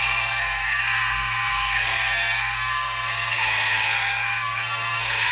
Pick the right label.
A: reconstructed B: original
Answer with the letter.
A